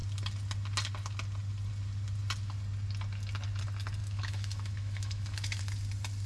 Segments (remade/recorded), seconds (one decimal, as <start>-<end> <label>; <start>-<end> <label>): 0.0-4.0 recorded; 4.0-5.6 remade; 5.6-6.3 recorded